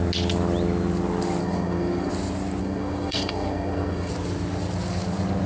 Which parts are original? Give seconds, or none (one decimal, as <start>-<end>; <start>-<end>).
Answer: 0.0-1.4; 2.1-2.6; 4.1-5.5